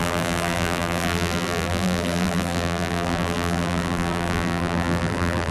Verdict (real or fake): fake